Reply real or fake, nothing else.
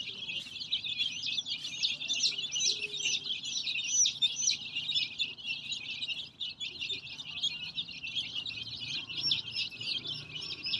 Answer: real